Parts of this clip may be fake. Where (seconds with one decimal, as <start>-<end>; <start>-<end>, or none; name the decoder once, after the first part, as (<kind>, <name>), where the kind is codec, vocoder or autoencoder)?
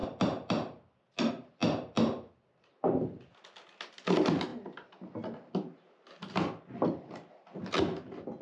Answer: none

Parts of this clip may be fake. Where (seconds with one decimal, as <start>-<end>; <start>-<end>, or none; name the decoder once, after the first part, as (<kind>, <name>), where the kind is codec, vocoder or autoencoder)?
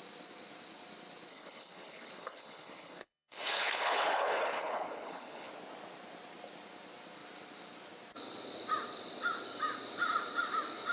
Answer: 1.3-5.5 (codec, HILCodec)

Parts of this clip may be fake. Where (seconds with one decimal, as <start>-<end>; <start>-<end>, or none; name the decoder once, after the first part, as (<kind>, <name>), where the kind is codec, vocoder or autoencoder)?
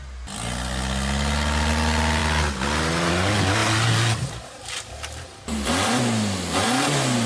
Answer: none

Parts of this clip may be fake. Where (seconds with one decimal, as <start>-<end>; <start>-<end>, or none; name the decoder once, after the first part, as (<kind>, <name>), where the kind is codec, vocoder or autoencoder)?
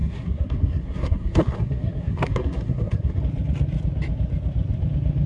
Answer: 0.0-3.2 (codec, SNAC)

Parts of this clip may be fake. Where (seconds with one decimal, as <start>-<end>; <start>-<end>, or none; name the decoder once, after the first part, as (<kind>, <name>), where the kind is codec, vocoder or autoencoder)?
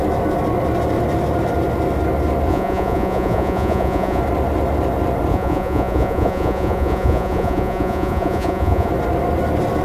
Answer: 2.5-4.2 (vocoder, Vocos); 5.3-8.9